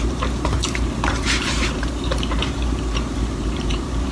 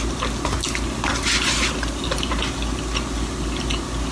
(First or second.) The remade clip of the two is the first